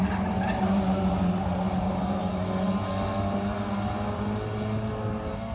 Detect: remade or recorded recorded